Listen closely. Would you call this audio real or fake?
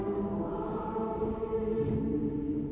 fake